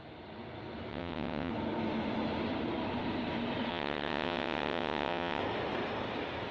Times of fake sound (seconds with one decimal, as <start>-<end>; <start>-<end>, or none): 0.9-1.5; 3.7-5.4